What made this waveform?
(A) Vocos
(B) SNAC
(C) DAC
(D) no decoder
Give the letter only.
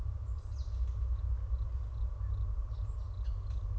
D